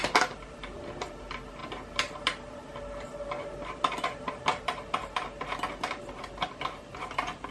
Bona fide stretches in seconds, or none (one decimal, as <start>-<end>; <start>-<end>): 0.0-7.5